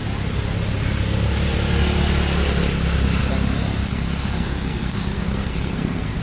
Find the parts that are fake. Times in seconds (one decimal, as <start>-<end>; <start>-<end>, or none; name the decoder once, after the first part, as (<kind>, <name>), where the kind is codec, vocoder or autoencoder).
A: 3.9-6.2 (codec, SNAC)